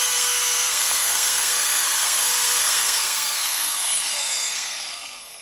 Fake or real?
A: fake